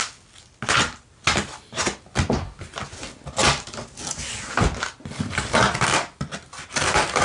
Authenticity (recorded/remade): recorded